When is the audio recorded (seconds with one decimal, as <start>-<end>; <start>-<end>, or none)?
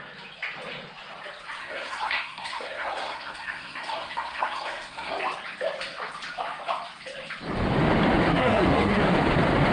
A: 0.0-1.6; 5.2-8.3; 9.0-9.7